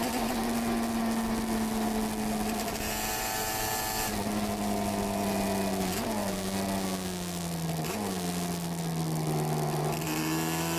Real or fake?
real